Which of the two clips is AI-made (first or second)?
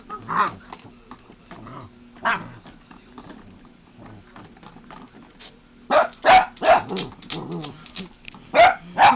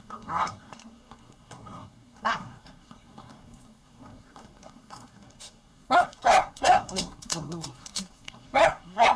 second